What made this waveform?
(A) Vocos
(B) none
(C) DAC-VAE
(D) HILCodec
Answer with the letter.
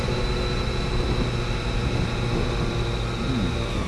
B